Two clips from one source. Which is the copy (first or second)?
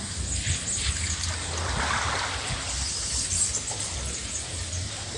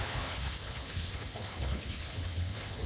second